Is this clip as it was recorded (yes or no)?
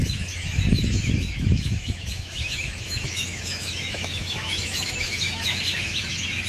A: no